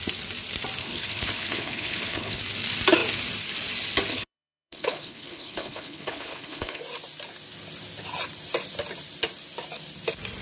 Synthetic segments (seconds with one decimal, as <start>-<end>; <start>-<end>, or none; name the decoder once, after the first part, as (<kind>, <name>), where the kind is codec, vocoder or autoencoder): 0.8-2.4 (codec, HILCodec); 4.1-6.8